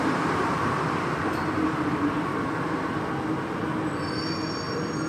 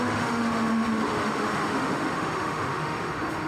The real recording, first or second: first